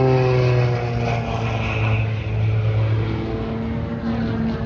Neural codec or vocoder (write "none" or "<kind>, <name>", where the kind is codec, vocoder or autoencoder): none